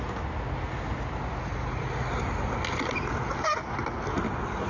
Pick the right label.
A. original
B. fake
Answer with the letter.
A